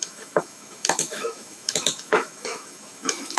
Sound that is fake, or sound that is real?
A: fake